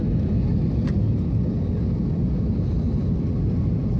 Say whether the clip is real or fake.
real